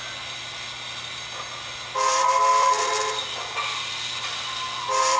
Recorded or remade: recorded